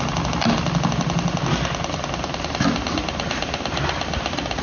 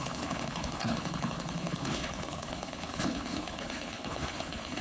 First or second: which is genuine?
first